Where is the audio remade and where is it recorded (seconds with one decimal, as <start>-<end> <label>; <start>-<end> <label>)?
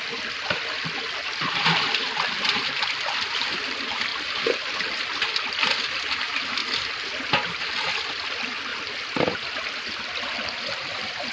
0.0-4.1 remade; 4.1-4.7 recorded; 4.7-6.6 remade; 6.6-7.7 recorded; 7.7-11.3 remade